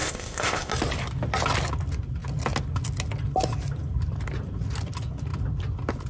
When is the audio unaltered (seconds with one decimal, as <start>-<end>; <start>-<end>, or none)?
0.7-6.1